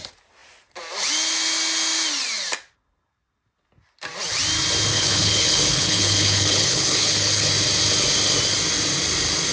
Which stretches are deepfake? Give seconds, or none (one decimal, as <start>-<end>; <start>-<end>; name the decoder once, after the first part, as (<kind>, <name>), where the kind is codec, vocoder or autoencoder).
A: 4.9-7.5 (codec, HILCodec)